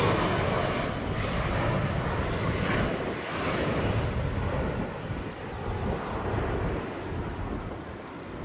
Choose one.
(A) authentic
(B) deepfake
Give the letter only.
A